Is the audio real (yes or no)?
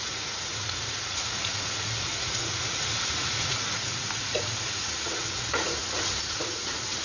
no